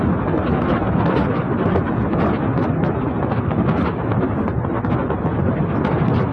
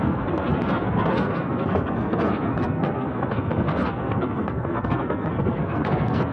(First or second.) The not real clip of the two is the second